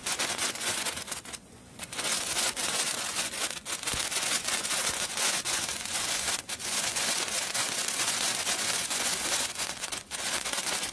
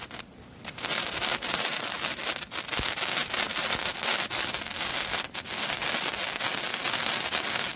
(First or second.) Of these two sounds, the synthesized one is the first